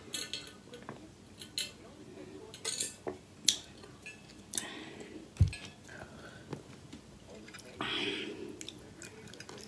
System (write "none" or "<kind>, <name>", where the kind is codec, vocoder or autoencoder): none